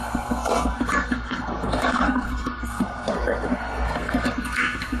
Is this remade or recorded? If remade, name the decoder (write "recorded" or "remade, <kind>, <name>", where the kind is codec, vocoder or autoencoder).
remade, codec, SNAC